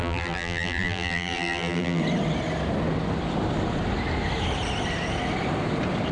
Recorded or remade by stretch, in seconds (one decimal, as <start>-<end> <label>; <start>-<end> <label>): 0.0-2.0 remade; 2.0-6.1 recorded